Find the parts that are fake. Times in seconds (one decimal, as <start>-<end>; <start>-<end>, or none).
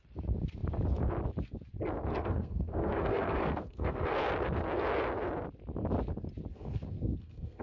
2.1-4.2; 6.5-7.6